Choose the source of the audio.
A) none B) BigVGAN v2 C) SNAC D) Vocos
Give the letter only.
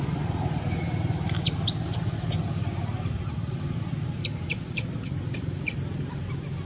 A